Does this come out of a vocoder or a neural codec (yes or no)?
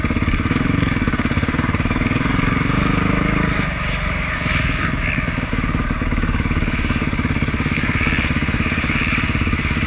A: yes